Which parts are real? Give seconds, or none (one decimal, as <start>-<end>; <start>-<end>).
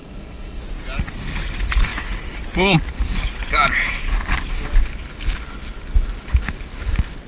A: 0.6-7.3